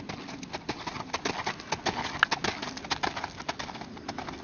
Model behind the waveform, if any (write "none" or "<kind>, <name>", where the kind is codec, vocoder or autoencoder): none